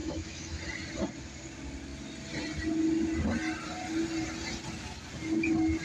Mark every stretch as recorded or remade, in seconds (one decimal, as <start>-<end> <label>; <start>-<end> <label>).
0.0-0.6 remade; 0.6-5.8 recorded